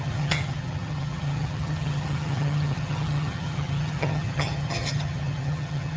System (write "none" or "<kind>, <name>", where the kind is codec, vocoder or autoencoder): vocoder, HiFi-GAN